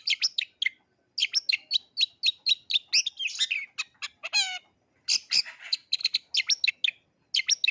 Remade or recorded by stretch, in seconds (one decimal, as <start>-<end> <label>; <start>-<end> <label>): 0.0-7.7 recorded